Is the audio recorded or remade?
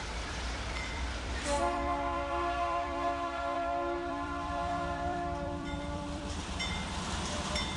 remade